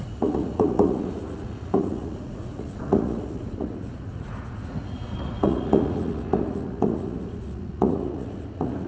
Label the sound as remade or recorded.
remade